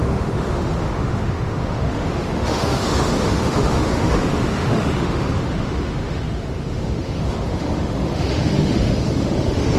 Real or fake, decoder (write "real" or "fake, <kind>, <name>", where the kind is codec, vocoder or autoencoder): fake, autoencoder, DAC-VAE